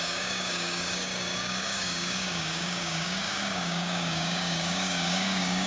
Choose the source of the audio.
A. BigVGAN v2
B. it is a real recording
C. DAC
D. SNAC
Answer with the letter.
C